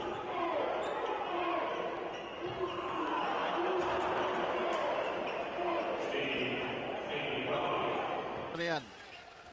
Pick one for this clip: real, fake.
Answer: real